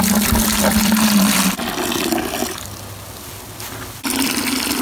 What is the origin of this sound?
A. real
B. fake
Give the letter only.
A